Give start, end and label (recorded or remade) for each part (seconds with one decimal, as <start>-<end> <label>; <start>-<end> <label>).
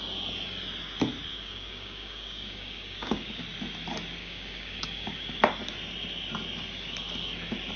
0.0-1.3 recorded; 1.3-3.4 remade; 3.4-4.2 recorded; 4.2-5.4 remade; 5.4-7.8 recorded